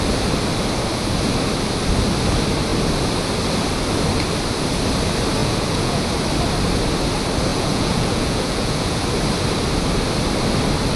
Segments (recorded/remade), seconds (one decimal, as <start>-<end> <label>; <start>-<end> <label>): 0.0-5.4 recorded; 5.4-6.0 remade; 6.0-7.5 recorded; 7.5-9.0 remade; 9.0-11.0 recorded